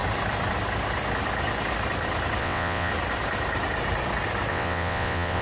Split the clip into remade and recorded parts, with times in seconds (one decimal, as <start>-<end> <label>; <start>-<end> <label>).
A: 0.0-2.4 recorded; 2.4-2.9 remade; 2.9-4.5 recorded; 4.5-5.4 remade